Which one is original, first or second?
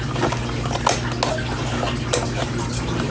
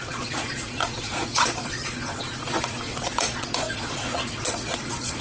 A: first